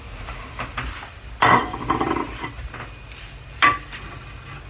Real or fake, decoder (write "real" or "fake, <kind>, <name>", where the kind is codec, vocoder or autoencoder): real